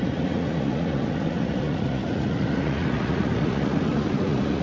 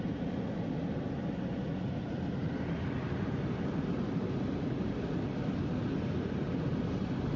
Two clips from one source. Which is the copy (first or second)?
first